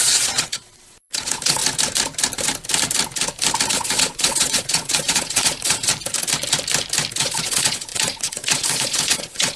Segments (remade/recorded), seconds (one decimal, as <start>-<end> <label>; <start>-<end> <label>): 0.0-1.6 remade; 1.6-3.7 recorded; 3.7-5.9 remade; 5.9-7.2 recorded; 7.2-9.6 remade